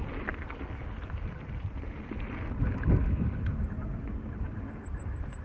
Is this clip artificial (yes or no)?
no